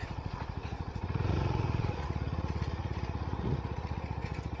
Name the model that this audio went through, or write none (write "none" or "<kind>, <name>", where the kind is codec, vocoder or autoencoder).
vocoder, Vocos